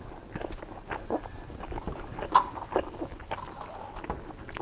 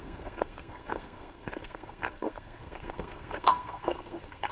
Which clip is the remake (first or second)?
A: second